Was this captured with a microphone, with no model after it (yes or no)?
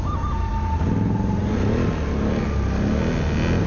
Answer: yes